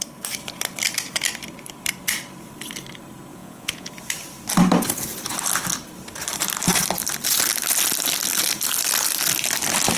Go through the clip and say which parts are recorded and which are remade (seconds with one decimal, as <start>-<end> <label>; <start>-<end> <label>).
0.0-3.3 recorded; 3.3-3.9 remade; 3.9-10.0 recorded